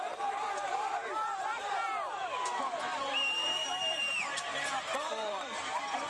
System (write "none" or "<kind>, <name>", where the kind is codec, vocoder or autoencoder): vocoder, BigVGAN v2